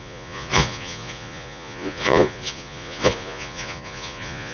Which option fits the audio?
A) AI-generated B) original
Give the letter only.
A